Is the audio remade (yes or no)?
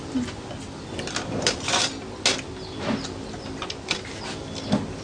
no